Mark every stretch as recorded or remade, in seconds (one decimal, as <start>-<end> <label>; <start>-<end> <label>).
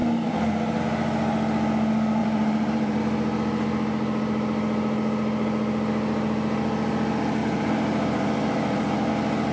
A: 0.0-0.8 remade; 0.8-2.2 recorded; 2.2-3.0 remade; 3.0-7.4 recorded; 7.4-9.1 remade; 9.1-9.5 recorded